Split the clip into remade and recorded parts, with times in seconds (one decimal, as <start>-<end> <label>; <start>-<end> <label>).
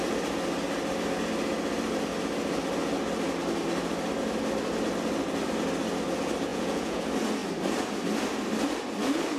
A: 0.0-6.5 recorded; 6.5-7.0 remade; 7.0-9.4 recorded